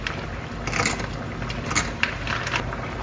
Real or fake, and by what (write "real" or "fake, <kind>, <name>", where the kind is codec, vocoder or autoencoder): real